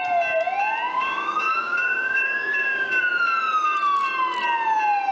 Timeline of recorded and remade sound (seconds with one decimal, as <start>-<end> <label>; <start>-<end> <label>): 0.0-0.9 recorded; 0.9-3.0 remade; 3.0-5.1 recorded